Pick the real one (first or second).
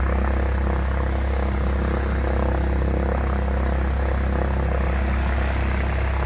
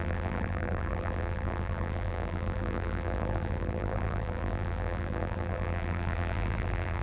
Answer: first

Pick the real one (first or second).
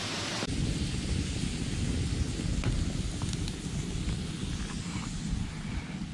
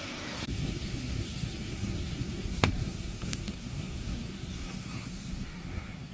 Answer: first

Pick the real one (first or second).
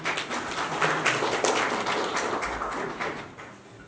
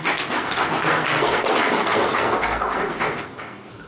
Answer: first